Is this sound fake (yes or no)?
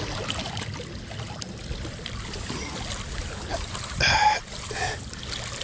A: no